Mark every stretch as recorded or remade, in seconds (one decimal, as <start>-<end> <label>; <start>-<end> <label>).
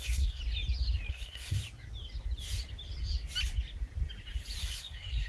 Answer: 0.0-0.4 remade; 0.4-1.1 recorded; 1.1-1.6 remade; 1.6-4.6 recorded; 4.6-5.3 remade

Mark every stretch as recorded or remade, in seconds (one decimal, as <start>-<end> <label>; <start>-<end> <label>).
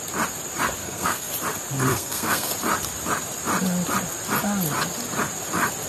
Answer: 0.0-0.8 recorded; 0.8-1.3 remade; 1.3-1.9 recorded; 1.9-2.5 remade; 2.5-5.9 recorded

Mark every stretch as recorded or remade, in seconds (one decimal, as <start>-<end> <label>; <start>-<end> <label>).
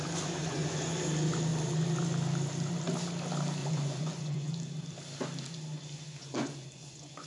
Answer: 0.0-0.4 recorded; 0.4-1.0 remade; 1.0-3.6 recorded; 3.6-4.5 remade; 4.5-6.2 recorded; 6.2-7.3 remade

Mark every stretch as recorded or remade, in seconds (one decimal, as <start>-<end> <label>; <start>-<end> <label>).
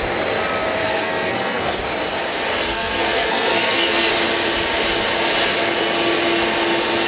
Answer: 0.0-0.8 recorded; 0.8-1.8 remade; 1.8-2.5 recorded; 2.5-4.1 remade; 4.1-7.1 recorded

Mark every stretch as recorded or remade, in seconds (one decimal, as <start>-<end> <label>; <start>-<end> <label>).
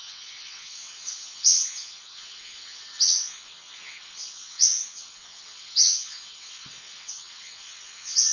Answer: 0.0-8.3 remade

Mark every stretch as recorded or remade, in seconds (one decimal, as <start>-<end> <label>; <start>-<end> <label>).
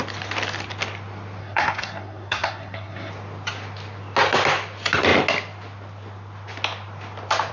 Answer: 0.0-1.4 recorded; 1.4-3.1 remade; 3.1-7.5 recorded